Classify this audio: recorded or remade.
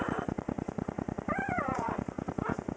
remade